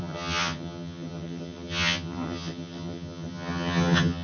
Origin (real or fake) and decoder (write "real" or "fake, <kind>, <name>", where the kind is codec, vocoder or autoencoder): fake, vocoder, HiFi-GAN